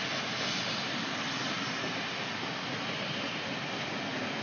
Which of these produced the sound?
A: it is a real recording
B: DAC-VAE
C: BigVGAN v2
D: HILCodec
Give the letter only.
A